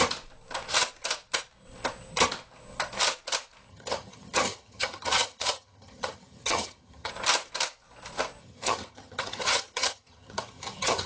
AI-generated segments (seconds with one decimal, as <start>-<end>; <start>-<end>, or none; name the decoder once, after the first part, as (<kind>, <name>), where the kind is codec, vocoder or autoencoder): 3.7-7.1 (vocoder, HiFi-GAN); 8.4-11.1